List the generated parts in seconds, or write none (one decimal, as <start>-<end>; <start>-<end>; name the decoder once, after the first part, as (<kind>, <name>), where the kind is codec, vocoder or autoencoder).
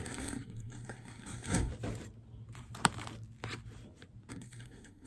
0.0-1.7 (codec, SNAC); 4.3-5.1